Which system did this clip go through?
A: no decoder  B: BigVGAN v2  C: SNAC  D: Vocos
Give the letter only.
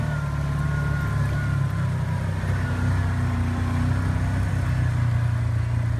A